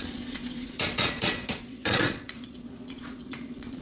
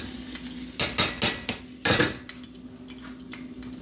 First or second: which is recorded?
second